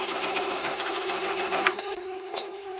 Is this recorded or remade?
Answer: remade